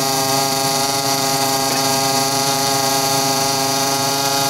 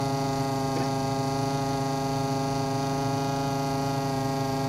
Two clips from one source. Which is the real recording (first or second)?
second